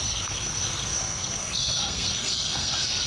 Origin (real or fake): fake